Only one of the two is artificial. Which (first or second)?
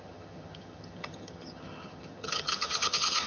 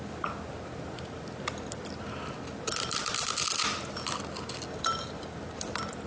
first